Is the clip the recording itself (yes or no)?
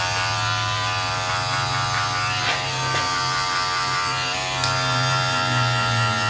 no